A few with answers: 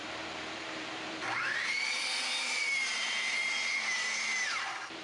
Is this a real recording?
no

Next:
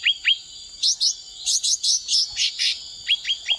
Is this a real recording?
yes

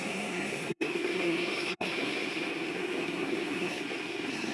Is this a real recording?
no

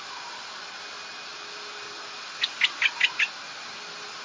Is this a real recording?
yes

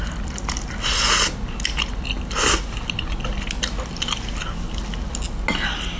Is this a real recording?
yes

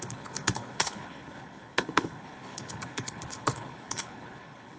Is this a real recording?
no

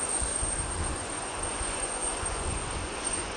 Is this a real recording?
no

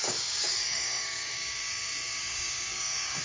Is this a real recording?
no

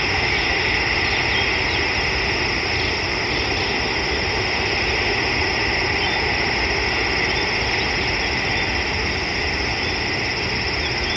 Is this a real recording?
yes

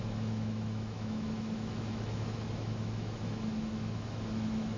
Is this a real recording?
no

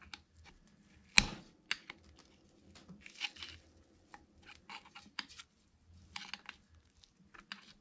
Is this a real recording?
yes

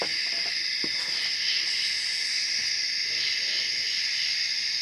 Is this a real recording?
yes